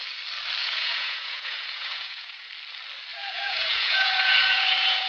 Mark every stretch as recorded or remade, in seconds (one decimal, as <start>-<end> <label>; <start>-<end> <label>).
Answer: 0.0-0.6 recorded; 0.6-2.5 remade; 2.5-3.1 recorded; 3.1-5.1 remade